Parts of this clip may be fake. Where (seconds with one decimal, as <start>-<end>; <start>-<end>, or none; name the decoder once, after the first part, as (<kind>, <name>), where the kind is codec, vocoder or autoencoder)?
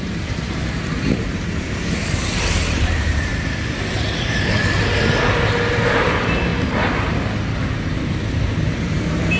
0.0-3.3 (vocoder, BigVGAN v2); 5.7-6.5; 7.6-9.4